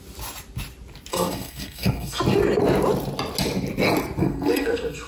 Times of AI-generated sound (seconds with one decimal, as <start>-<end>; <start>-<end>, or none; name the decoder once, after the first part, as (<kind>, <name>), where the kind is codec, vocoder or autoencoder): 1.1-2.2 (codec, SNAC); 4.2-5.1